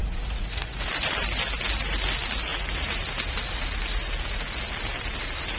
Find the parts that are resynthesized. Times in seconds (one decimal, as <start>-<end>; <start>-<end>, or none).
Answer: 0.0-0.9